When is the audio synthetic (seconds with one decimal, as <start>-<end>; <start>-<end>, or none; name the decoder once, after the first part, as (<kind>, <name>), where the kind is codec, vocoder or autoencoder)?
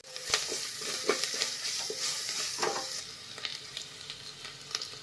0.0-3.0 (vocoder, BigVGAN v2); 3.5-4.1